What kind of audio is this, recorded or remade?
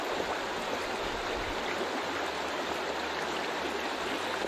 recorded